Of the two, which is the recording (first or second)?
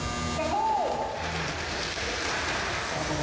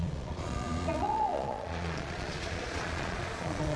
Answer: first